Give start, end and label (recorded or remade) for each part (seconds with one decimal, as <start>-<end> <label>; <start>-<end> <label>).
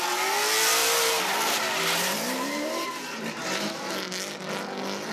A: 0.0-0.8 recorded; 0.8-3.9 remade; 3.9-5.1 recorded